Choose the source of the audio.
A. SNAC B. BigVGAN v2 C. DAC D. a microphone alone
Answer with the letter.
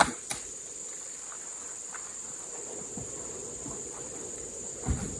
D